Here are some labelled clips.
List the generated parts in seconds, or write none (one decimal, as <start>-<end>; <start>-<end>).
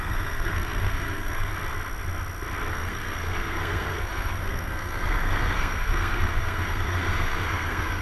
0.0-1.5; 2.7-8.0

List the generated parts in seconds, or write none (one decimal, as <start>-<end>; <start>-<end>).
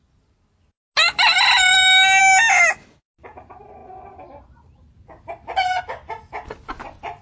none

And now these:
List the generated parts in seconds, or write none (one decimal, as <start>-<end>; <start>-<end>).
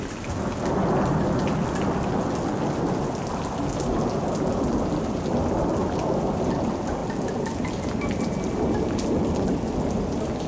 none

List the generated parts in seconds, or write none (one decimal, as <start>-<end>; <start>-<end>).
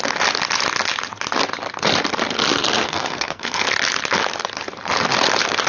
2.8-3.7